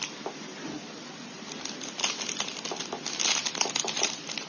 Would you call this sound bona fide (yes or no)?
yes